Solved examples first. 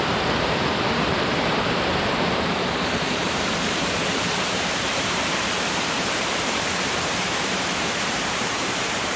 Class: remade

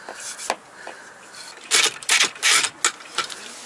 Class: recorded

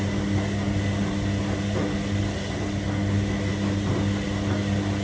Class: recorded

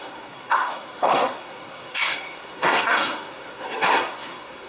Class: remade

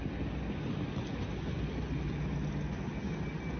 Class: recorded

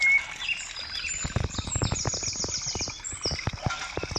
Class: recorded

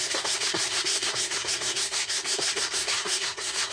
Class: remade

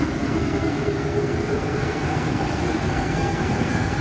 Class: remade